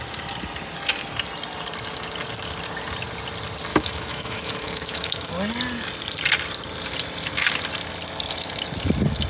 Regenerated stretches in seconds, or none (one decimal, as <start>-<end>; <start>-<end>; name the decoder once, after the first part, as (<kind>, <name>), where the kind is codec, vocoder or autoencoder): 3.7-5.3 (autoencoder, DAC-VAE)